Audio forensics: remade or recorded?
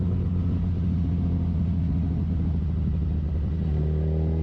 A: recorded